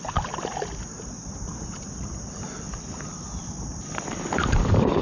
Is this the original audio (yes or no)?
yes